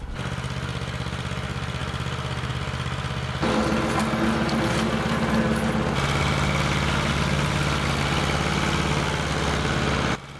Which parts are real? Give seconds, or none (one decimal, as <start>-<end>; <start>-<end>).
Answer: 0.0-10.4